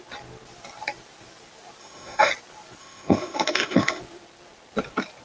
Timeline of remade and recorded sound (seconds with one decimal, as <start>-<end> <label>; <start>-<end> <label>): 0.0-1.8 recorded; 1.8-2.3 remade; 2.3-2.8 recorded; 2.8-4.0 remade; 4.0-5.2 recorded